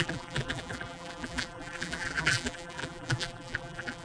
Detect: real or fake fake